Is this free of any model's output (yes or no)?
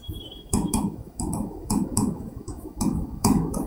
no